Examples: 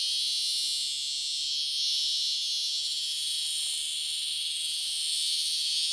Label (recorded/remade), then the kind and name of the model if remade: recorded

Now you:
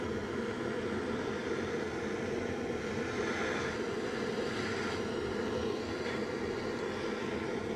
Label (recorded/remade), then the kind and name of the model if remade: recorded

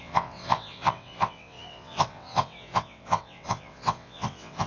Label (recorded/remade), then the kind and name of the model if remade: remade, vocoder, WaveNeXt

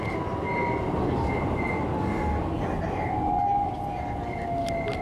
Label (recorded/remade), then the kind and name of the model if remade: recorded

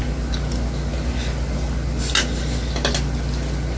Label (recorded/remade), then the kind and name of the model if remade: recorded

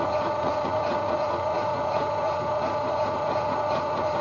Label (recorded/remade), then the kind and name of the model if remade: remade, vocoder, Vocos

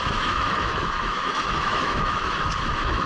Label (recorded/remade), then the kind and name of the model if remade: remade, autoencoder, DAC-VAE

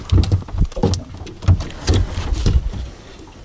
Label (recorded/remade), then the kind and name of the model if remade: recorded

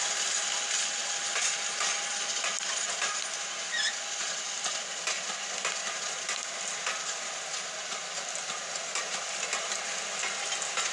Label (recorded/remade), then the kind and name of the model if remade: recorded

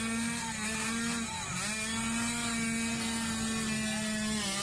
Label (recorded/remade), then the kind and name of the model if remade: recorded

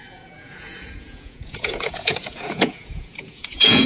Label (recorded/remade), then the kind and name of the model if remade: remade, vocoder, Vocos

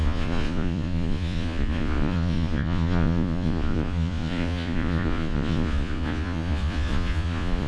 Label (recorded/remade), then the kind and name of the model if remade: remade, vocoder, Vocos